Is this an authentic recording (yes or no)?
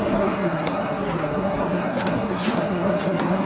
no